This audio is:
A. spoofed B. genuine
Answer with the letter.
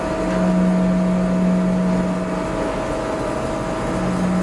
B